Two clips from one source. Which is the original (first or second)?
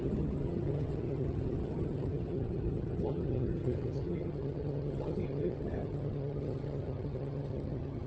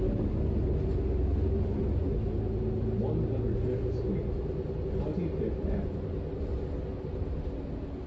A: second